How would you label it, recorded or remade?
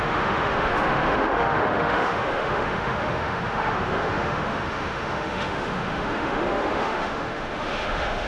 remade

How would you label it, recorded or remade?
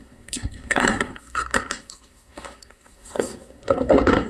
remade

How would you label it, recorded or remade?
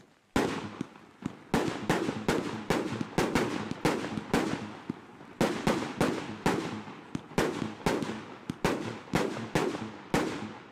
recorded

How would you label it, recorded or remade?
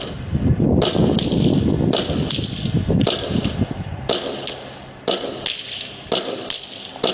recorded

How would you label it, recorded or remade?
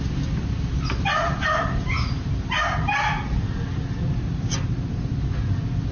recorded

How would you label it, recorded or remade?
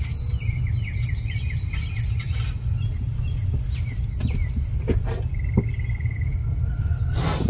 recorded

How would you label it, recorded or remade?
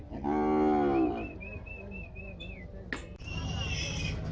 recorded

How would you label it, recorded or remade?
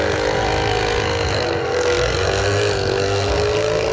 remade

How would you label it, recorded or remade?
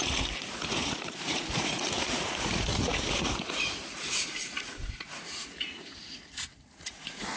remade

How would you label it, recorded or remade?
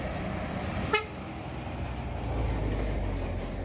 recorded